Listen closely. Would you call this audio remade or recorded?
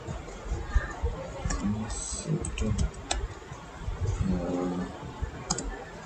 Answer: recorded